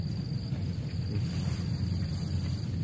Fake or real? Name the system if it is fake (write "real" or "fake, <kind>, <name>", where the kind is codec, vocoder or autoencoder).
real